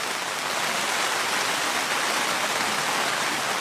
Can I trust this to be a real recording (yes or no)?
yes